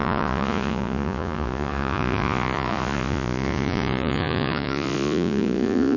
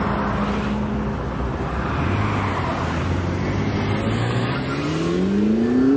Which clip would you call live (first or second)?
second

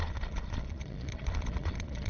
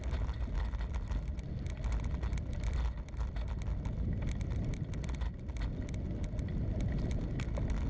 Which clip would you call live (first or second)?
second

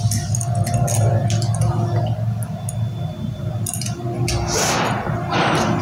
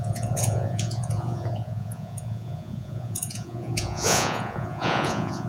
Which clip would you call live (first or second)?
first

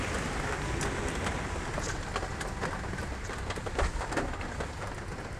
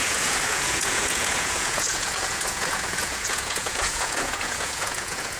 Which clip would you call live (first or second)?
first